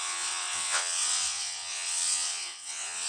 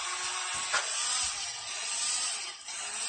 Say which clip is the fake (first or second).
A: first